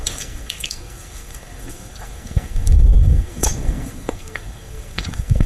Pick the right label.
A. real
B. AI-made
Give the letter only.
B